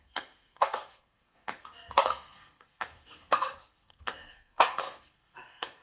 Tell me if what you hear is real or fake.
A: fake